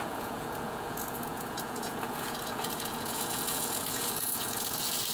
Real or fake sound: fake